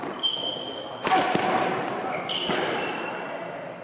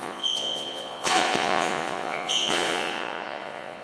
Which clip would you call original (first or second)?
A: first